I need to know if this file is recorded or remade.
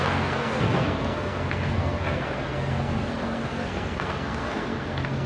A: remade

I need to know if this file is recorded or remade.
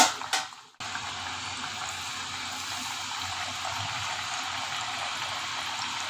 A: recorded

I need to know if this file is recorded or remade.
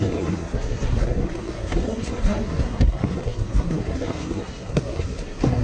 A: remade